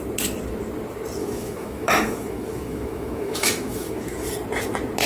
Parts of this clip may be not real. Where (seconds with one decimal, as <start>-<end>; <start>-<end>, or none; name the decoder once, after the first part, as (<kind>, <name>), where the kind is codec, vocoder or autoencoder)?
1.2-4.3 (autoencoder, DAC-VAE)